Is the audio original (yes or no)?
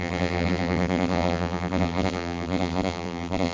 no